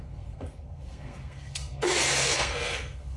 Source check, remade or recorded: remade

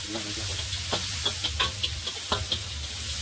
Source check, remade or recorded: recorded